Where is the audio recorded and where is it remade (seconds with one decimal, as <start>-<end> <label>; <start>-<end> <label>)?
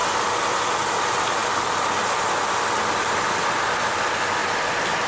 0.0-5.1 recorded